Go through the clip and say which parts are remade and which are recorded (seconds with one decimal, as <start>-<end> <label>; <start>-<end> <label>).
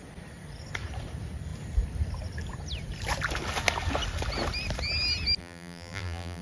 0.0-5.4 recorded; 5.4-6.4 remade